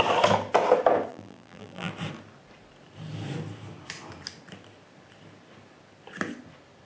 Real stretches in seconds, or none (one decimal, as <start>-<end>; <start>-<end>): 0.0-1.1; 1.9-6.9